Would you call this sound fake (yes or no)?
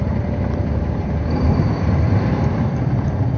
yes